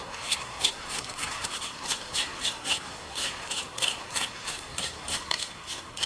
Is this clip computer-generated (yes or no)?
yes